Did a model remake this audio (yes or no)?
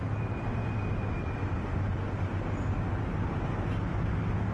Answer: no